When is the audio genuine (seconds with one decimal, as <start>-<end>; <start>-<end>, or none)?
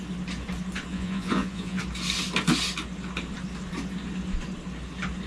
0.0-0.9; 1.8-5.3